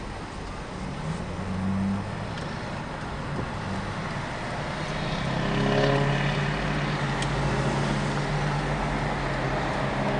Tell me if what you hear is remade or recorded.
recorded